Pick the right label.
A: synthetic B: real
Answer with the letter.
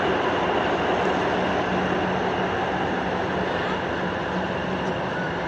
B